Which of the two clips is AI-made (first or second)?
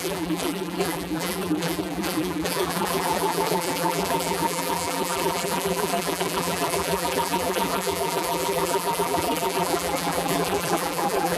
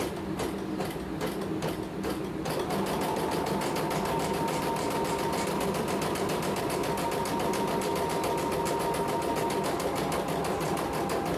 first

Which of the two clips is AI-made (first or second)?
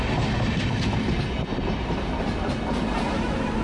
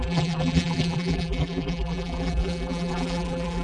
second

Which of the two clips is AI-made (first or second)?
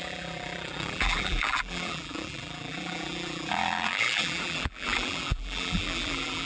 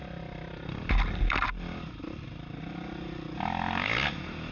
first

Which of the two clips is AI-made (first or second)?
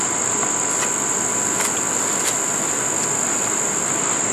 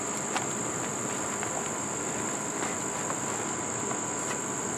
second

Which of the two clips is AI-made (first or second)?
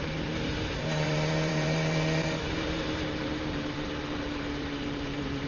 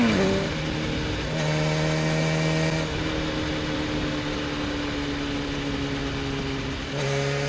first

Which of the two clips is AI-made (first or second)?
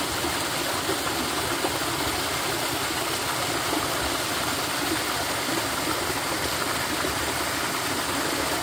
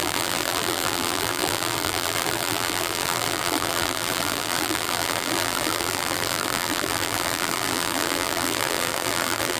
second